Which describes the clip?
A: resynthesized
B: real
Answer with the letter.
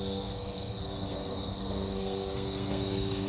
A